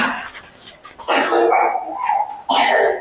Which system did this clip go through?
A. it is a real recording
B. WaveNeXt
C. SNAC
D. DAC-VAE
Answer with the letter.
A